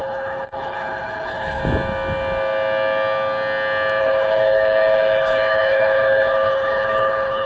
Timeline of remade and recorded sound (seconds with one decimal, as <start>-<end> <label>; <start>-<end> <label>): 0.0-1.6 remade; 1.6-4.0 recorded; 4.0-7.5 remade